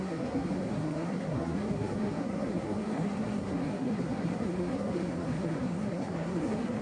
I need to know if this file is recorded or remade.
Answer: remade